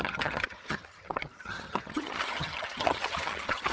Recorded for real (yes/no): no